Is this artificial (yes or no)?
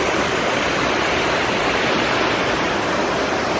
yes